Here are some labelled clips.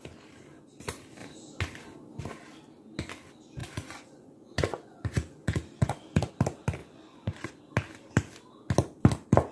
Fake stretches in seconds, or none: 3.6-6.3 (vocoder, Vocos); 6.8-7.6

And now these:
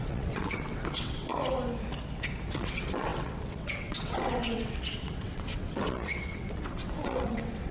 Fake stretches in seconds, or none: 0.0-1.3 (vocoder, WaveNeXt); 2.5-7.7